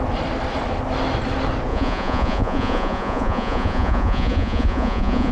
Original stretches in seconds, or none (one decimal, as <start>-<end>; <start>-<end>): 0.0-1.7